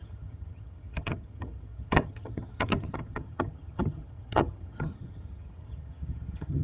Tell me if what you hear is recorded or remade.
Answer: remade